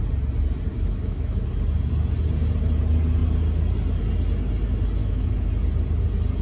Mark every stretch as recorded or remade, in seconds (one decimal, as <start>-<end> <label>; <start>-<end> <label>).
0.0-0.7 recorded; 0.7-1.4 remade; 1.4-5.0 recorded; 5.0-5.5 remade; 5.5-6.4 recorded